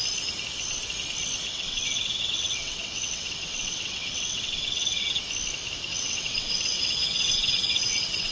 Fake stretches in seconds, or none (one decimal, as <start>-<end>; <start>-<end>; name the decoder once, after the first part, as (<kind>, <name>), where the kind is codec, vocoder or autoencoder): 1.5-5.1 (vocoder, WaveNeXt); 5.9-8.3